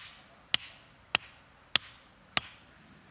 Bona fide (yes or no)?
yes